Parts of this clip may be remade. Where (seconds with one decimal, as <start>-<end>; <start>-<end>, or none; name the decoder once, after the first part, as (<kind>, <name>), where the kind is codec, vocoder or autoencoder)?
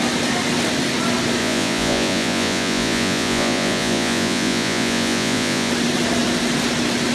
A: 1.4-5.7 (vocoder, Vocos)